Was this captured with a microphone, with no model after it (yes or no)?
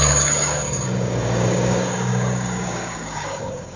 no